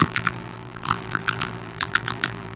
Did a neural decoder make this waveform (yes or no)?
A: yes